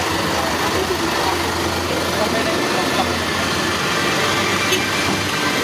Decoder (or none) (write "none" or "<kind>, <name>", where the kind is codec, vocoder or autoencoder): none